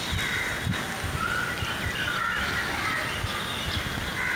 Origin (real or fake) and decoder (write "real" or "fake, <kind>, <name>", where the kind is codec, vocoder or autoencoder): real